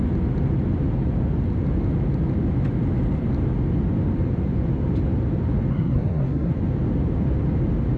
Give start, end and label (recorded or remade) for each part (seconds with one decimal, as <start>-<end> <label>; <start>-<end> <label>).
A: 0.0-5.7 recorded; 5.7-6.5 remade; 6.5-8.0 recorded